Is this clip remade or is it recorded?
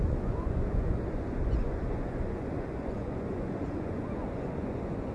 remade